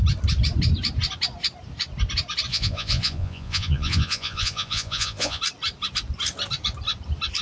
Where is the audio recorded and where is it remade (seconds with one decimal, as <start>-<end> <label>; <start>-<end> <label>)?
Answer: 0.0-2.5 recorded; 2.5-5.4 remade; 5.4-7.4 recorded